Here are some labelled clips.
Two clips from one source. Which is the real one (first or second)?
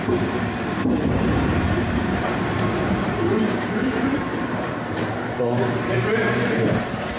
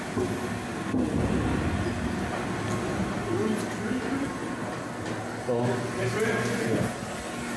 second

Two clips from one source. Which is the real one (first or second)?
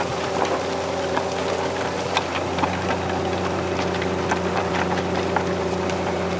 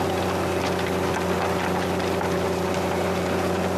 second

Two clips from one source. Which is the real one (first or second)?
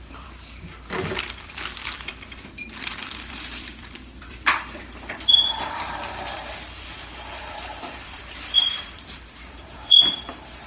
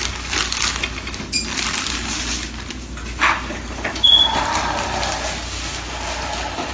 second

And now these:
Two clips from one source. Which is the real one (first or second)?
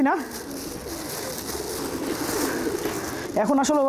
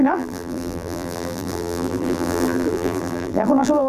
first